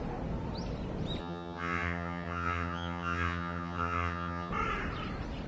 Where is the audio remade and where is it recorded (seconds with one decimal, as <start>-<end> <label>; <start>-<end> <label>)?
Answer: 0.0-1.2 recorded; 1.2-4.5 remade; 4.5-5.5 recorded